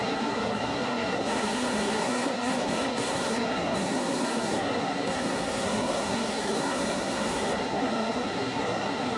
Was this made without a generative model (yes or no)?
no